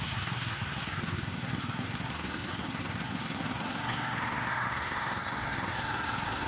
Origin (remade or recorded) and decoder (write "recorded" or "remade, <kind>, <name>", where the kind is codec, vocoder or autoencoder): remade, codec, SNAC